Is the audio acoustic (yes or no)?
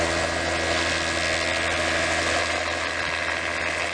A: yes